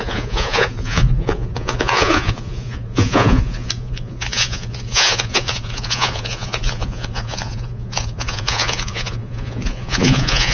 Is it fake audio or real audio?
fake